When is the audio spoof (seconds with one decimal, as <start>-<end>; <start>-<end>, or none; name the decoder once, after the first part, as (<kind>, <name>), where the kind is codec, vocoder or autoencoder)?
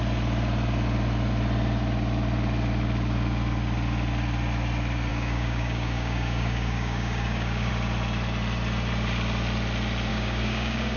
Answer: 5.1-7.7 (codec, DAC); 10.1-11.0